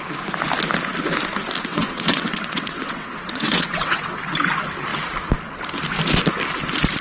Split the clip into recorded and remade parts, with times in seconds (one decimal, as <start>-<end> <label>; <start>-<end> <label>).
0.0-1.7 recorded; 1.7-4.5 remade; 4.5-7.0 recorded